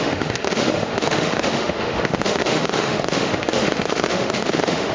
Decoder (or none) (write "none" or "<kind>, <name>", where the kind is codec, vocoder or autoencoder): autoencoder, DAC-VAE